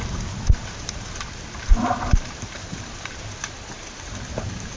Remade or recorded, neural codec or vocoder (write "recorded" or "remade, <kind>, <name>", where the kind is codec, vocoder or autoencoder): remade, vocoder, BigVGAN v2